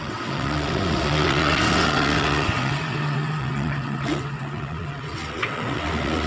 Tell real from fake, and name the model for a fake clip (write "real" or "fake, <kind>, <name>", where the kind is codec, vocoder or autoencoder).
fake, vocoder, WaveNeXt